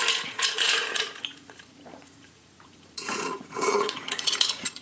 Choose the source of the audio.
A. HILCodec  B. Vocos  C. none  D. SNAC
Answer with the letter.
B